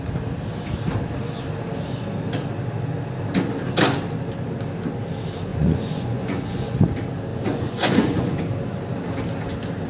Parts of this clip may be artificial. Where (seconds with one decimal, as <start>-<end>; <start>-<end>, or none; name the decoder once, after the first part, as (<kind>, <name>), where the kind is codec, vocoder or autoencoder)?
5.5-6.8 (vocoder, Vocos); 7.3-8.4